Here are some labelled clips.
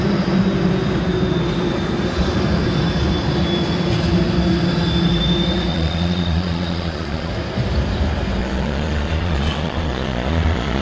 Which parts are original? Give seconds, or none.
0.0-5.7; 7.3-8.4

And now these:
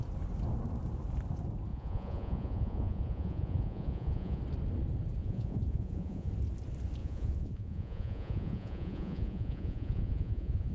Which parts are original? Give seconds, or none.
0.0-1.7; 4.4-5.2; 6.3-7.0

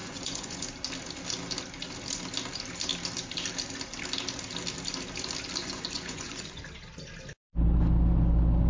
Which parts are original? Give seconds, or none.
0.6-5.6; 6.6-8.7

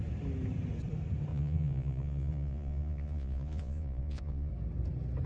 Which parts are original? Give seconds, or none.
0.0-1.3; 4.5-5.3